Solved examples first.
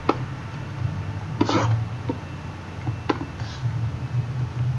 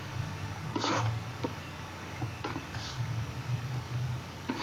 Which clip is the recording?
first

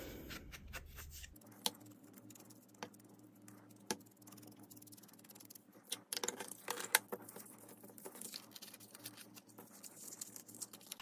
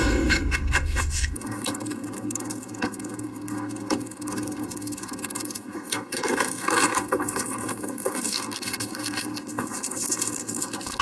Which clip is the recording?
first